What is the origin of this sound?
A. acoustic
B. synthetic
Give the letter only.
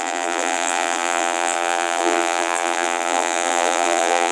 B